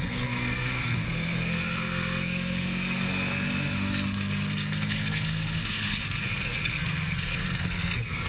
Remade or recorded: remade